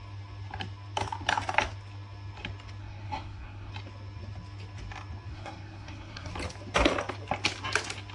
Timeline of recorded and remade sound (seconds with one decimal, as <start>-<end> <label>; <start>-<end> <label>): 0.0-2.8 recorded; 2.8-3.7 remade; 3.7-5.3 recorded; 5.3-6.3 remade; 6.3-8.1 recorded